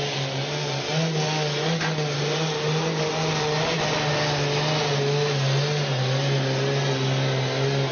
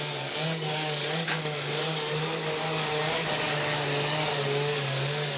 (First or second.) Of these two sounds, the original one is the first